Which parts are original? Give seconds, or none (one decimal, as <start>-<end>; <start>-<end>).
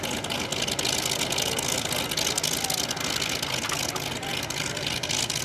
0.0-4.3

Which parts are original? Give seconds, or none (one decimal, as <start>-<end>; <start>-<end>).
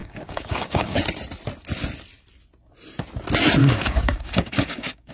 1.0-3.6